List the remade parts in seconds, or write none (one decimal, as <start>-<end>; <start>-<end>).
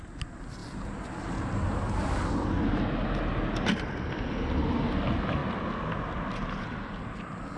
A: none